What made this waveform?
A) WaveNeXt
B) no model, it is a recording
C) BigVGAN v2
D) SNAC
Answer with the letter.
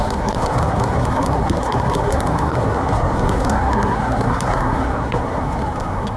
D